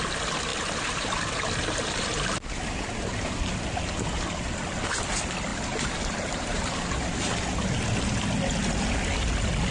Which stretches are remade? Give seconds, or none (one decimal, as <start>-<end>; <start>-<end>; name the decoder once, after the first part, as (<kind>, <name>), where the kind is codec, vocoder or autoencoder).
0.5-2.6 (vocoder, BigVGAN v2)